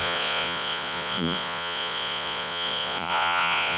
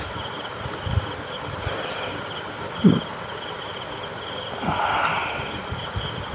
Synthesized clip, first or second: first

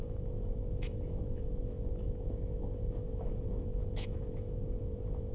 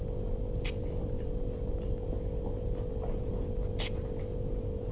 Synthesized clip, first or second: first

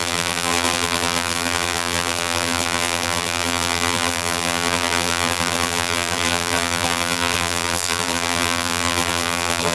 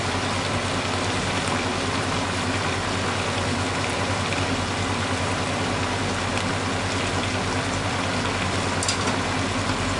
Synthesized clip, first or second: first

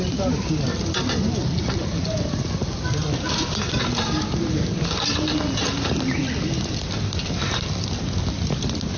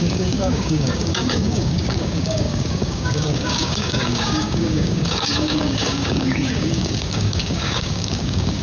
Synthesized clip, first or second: second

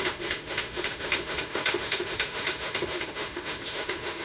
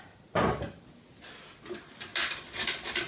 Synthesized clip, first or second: first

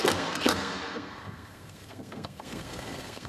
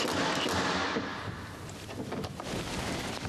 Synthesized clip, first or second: first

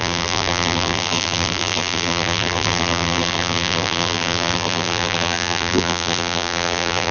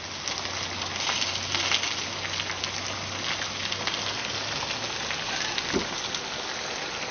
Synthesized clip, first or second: first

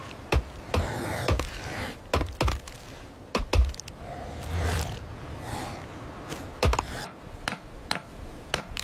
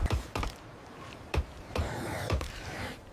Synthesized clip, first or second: second